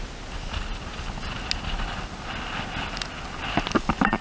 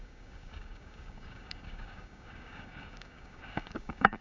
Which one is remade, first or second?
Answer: second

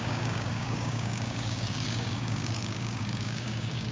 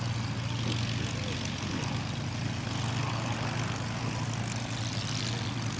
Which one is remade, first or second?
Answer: first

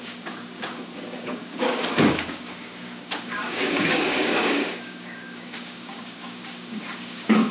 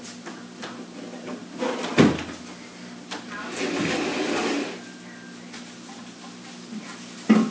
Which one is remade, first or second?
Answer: first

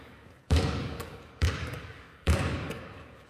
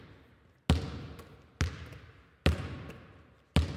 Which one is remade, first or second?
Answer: first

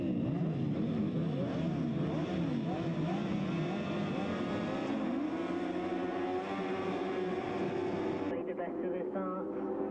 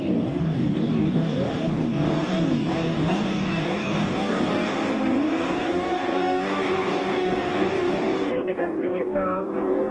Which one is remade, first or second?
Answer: second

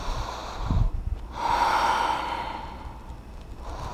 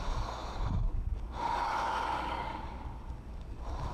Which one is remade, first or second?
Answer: second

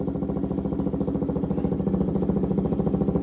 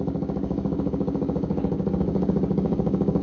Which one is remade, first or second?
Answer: second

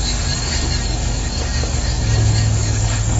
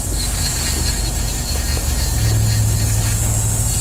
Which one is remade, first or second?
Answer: first